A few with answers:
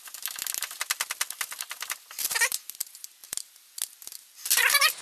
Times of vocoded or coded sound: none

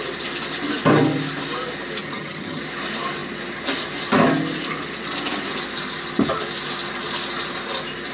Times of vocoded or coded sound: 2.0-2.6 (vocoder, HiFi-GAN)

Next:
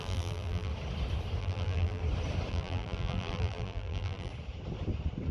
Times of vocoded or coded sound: 0.0-0.7 (vocoder, BigVGAN v2); 1.4-2.0; 2.5-4.3

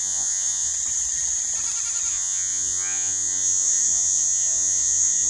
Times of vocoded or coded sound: 0.0-0.7 (vocoder, Vocos); 2.1-5.3

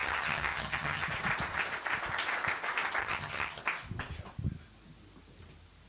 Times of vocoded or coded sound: 0.0-1.1 (vocoder, HiFi-GAN); 3.0-3.6

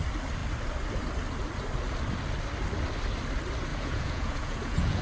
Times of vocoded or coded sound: 3.7-5.0 (vocoder, Vocos)

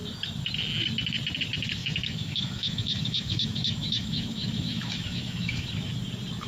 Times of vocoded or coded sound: 1.8-5.7 (autoencoder, DAC-VAE)

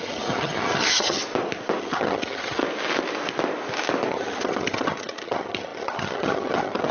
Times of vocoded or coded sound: 0.0-1.2 (vocoder, HiFi-GAN); 1.8-2.6; 4.1-6.9